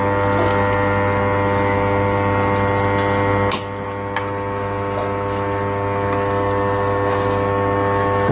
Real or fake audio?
real